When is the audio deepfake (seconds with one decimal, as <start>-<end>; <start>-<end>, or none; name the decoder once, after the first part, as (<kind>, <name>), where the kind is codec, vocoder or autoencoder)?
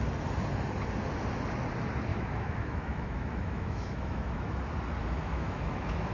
2.1-4.6 (autoencoder, DAC-VAE); 5.0-6.1